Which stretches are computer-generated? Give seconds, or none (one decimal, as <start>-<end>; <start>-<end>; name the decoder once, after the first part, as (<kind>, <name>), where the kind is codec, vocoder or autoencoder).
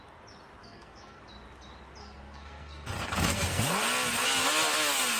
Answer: 0.6-1.2 (codec, SNAC); 2.0-3.6